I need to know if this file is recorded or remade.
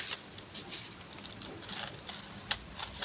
recorded